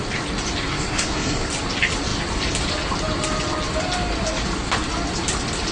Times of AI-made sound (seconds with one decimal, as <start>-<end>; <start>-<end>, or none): 0.7-1.5